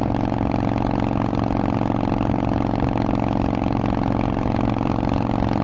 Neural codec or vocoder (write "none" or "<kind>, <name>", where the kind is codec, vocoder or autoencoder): none